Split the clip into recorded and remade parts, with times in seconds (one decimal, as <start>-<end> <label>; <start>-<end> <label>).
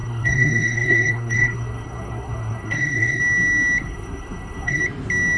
0.0-3.2 remade; 3.2-3.8 recorded; 3.8-4.8 remade; 4.8-5.4 recorded